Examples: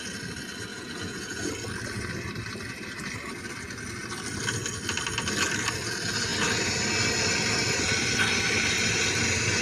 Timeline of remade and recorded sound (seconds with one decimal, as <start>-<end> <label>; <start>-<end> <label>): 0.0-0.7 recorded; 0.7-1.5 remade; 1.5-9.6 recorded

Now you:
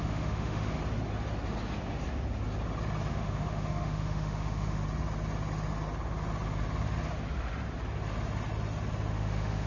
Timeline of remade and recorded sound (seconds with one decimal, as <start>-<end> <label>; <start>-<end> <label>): 0.0-0.8 remade; 0.8-3.1 recorded; 3.1-4.8 remade; 4.8-9.1 recorded; 9.1-9.7 remade

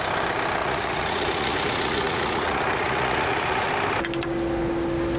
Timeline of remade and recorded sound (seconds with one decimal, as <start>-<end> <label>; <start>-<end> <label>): 0.0-0.6 recorded; 0.6-3.7 remade; 3.7-5.2 recorded